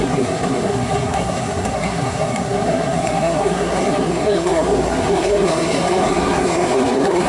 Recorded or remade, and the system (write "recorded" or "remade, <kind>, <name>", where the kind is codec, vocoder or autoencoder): remade, codec, SNAC